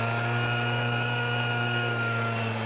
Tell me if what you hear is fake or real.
fake